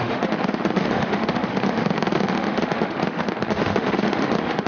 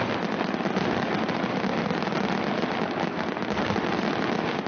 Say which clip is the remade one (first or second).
first